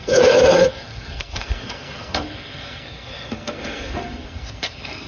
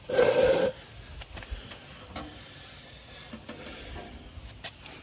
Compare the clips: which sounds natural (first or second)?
second